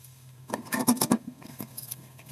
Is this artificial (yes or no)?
yes